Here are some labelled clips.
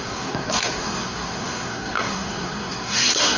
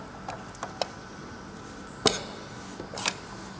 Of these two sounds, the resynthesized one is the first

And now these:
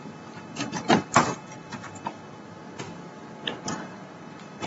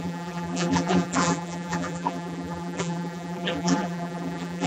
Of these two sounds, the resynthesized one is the second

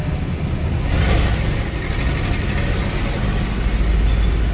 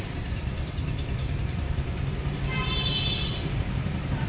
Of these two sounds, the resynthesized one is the second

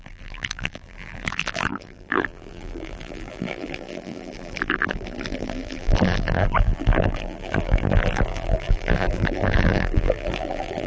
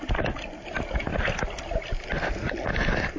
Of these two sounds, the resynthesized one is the first